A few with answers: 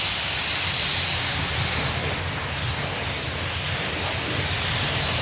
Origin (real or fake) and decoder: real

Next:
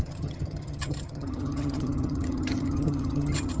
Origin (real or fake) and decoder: fake, vocoder, HiFi-GAN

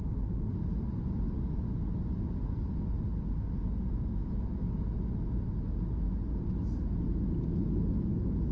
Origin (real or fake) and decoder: real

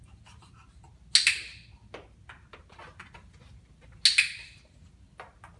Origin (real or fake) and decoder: real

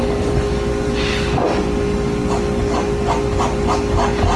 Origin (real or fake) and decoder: real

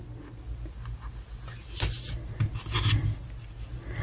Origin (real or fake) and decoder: real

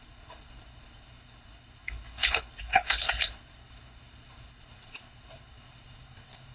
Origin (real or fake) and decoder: fake, codec, HILCodec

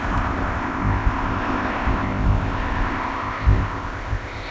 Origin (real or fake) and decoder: fake, codec, ZipCodec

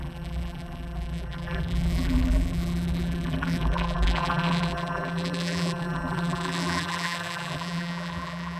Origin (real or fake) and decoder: fake, vocoder, BigVGAN v2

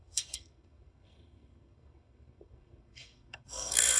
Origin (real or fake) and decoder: fake, codec, SNAC